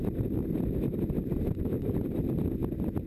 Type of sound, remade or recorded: remade